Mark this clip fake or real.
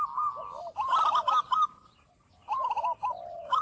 real